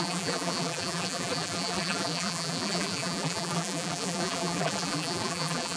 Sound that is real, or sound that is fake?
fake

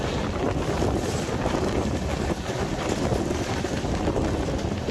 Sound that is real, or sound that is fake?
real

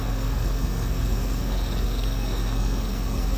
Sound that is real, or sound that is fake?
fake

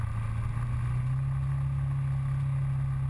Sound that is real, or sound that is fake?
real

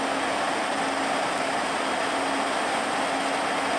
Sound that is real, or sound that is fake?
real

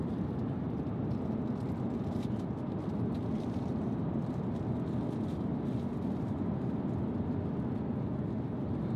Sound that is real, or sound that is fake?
real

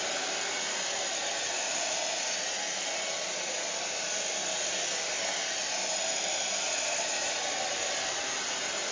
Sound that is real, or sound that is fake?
real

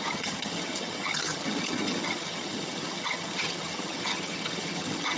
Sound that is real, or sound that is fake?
fake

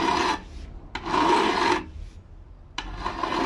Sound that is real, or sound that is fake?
real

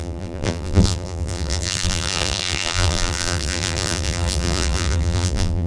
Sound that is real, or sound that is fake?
fake